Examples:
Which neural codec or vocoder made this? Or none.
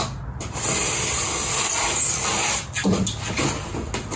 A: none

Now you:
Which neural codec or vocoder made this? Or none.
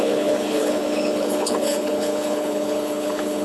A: codec, HILCodec